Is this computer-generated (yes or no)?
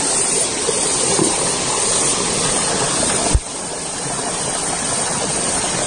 no